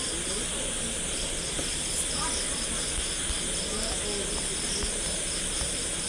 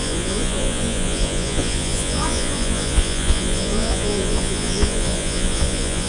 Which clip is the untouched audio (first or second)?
first